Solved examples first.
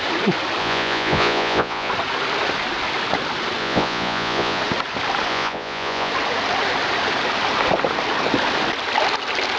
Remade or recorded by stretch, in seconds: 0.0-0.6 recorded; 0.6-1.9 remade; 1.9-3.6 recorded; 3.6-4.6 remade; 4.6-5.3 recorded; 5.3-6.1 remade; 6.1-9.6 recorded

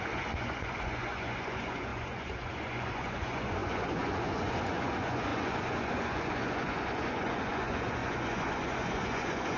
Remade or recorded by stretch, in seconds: 0.0-9.6 remade

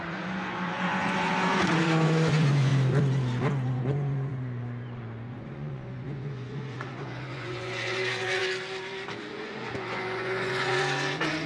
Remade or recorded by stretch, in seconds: 0.0-2.7 remade; 2.7-3.8 recorded; 3.8-8.4 remade; 8.4-9.3 recorded; 9.3-11.5 remade